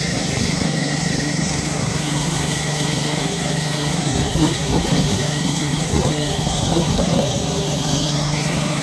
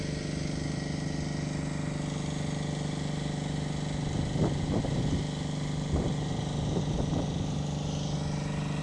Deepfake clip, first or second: first